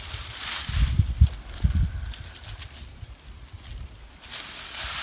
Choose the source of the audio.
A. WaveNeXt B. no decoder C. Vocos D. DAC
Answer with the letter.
B